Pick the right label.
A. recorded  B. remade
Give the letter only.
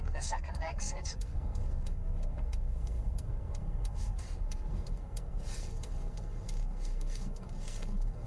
B